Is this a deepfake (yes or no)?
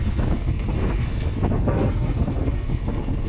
yes